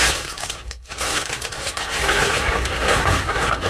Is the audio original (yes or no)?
no